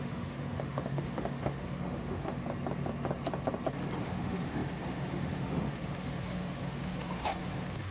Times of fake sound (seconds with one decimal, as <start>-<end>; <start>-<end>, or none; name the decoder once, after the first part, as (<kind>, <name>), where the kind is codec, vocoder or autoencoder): 0.0-2.4 (autoencoder, DAC-VAE); 4.0-7.9